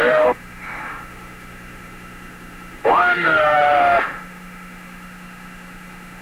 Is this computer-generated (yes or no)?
yes